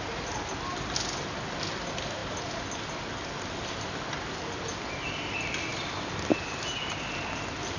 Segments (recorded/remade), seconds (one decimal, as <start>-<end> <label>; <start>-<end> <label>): 0.0-7.8 recorded